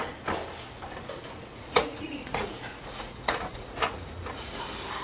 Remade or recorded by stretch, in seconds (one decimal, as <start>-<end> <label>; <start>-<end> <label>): 0.0-1.5 recorded; 1.5-4.5 remade; 4.5-5.0 recorded